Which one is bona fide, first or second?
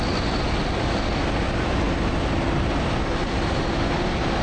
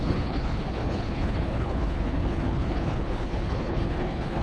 first